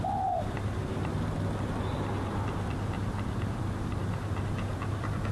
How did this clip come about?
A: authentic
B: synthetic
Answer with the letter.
A